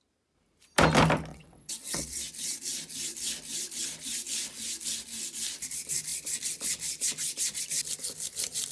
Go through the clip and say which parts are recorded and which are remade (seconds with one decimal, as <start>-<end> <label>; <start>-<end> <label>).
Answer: 0.0-1.3 recorded; 1.3-2.2 remade; 2.2-8.7 recorded